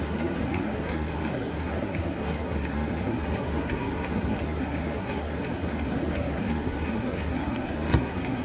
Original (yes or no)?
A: no